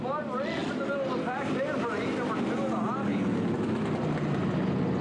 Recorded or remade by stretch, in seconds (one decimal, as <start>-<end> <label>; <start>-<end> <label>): 0.0-5.0 recorded